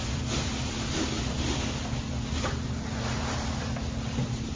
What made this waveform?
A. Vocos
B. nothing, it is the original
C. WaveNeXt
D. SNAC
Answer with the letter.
B